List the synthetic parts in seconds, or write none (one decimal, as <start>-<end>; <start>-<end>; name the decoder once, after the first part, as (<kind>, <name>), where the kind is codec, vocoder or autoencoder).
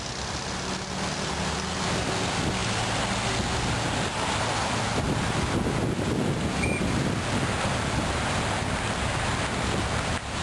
none